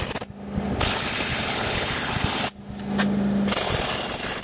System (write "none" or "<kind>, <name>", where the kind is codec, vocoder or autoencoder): none